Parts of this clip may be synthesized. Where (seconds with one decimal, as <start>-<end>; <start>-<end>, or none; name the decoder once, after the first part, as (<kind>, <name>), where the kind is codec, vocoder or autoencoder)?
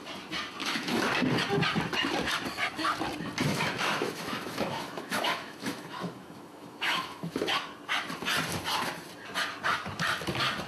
0.6-1.1 (autoencoder, DAC-VAE); 3.5-7.5